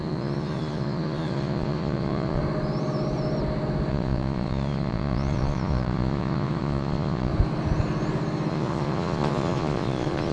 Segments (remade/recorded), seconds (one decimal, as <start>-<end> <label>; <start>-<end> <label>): 0.0-2.4 remade; 2.4-3.9 recorded; 3.9-7.3 remade; 7.3-8.5 recorded; 8.5-10.3 remade